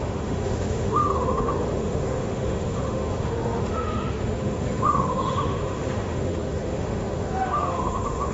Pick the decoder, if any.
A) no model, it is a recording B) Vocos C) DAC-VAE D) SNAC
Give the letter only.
C